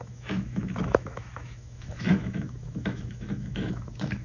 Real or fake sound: fake